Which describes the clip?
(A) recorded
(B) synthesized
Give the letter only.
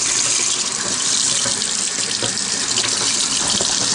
A